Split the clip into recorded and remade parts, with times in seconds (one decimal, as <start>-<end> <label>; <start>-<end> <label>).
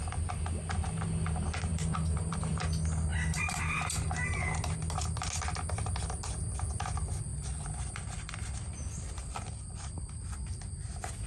0.0-1.7 recorded; 1.7-2.5 remade; 2.5-3.1 recorded; 3.1-3.6 remade; 3.6-7.3 recorded; 7.3-8.3 remade; 8.3-11.3 recorded